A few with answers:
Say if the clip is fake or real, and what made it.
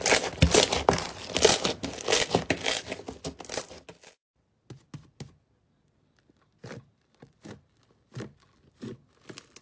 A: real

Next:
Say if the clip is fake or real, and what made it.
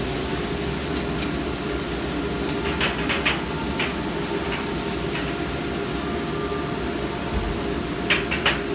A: real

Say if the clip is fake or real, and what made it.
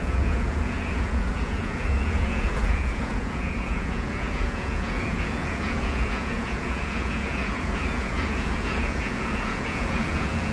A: fake, vocoder, Vocos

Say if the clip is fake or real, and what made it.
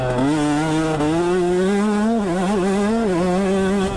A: real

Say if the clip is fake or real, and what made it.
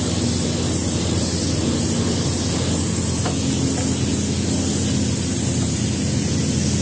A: real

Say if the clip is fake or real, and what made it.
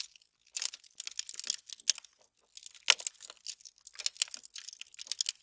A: real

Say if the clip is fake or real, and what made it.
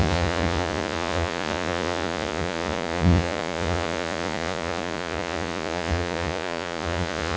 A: fake, vocoder, Vocos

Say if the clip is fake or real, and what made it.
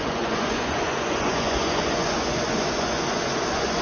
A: fake, vocoder, Vocos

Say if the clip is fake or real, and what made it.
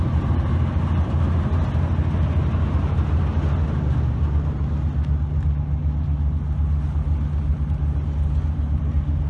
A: real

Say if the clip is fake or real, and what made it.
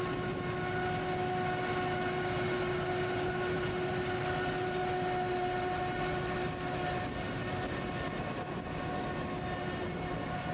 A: real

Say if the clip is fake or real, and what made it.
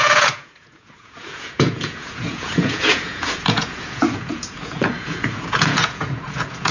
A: fake, vocoder, Vocos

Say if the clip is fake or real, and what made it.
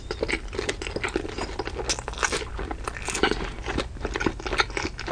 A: real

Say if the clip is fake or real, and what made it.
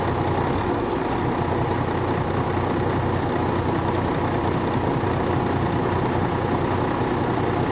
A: real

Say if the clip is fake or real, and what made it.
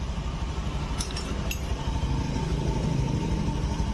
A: real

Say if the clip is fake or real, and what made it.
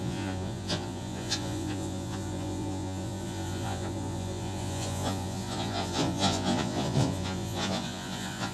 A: fake, vocoder, Vocos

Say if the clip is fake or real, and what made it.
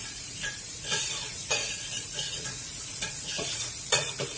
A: fake, vocoder, Vocos